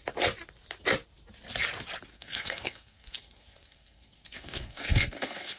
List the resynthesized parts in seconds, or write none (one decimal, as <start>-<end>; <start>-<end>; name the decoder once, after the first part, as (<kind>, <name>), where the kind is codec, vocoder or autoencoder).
2.1-5.6 (codec, SNAC)